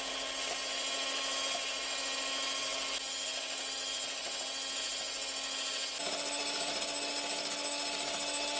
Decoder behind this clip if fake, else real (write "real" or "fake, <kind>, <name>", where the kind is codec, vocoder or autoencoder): real